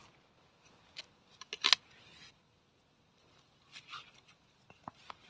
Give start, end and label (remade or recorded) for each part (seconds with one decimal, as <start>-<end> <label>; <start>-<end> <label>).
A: 0.0-5.3 recorded